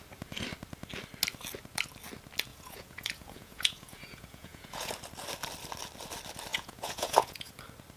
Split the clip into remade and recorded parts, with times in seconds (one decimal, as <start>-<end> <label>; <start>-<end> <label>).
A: 0.0-2.5 recorded; 2.5-4.9 remade; 4.9-6.5 recorded; 6.5-7.5 remade; 7.5-8.0 recorded